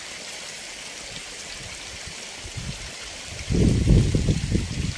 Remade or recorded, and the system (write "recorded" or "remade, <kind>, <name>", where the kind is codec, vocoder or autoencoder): recorded